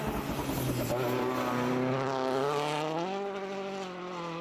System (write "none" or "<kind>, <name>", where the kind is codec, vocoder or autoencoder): none